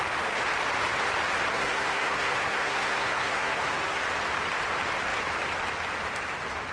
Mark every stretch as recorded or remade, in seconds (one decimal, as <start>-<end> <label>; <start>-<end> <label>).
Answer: 0.0-1.5 recorded; 1.5-4.0 remade; 4.0-6.7 recorded